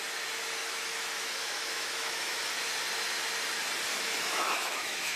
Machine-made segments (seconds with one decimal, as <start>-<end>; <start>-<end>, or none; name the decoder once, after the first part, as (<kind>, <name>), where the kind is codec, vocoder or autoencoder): 0.6-2.4 (autoencoder, DAC-VAE); 3.9-5.2